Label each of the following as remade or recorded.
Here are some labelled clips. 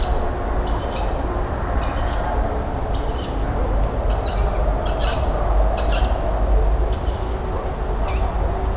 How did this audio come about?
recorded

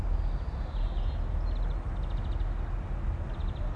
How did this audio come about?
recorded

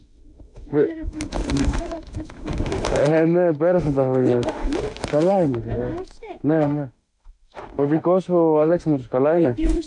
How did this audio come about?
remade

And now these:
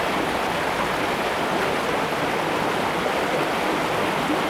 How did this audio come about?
recorded